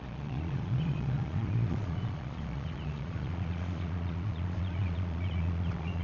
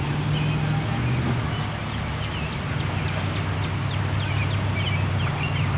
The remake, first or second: first